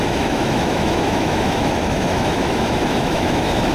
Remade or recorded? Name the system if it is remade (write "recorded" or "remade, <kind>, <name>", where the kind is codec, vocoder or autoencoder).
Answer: remade, autoencoder, DAC-VAE